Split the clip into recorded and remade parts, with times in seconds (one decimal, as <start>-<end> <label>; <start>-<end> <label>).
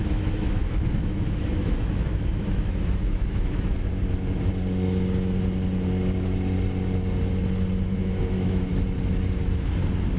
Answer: 0.0-3.9 remade; 3.9-7.9 recorded; 7.9-8.7 remade; 8.7-10.2 recorded